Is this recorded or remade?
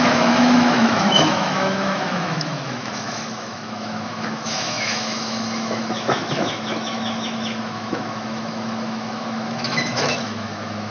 remade